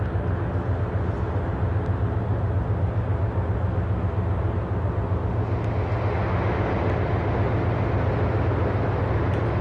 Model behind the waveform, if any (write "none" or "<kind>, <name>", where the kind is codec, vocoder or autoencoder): none